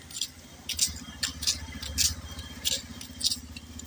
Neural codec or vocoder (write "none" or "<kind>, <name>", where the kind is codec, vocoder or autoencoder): none